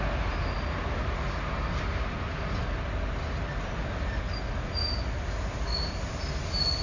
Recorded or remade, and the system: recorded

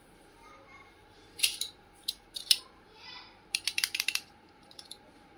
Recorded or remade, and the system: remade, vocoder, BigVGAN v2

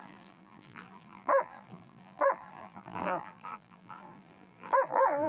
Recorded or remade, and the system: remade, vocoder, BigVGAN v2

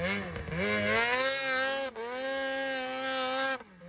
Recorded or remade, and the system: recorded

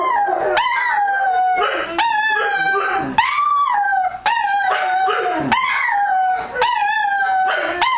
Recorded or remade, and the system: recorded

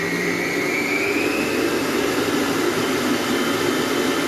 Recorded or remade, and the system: remade, vocoder, BigVGAN v2